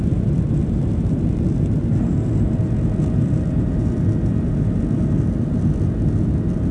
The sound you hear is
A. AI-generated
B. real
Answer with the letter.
B